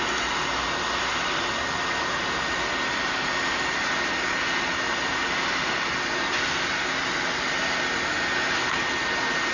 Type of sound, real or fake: real